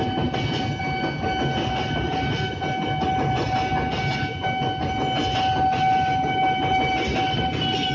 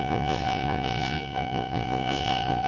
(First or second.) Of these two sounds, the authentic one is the first